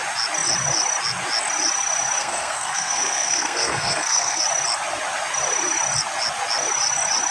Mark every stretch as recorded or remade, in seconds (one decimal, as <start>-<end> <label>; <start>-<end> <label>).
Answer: 0.0-2.2 recorded; 2.2-4.4 remade; 4.4-7.3 recorded